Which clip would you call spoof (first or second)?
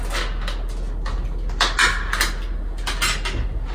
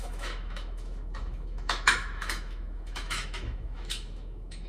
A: second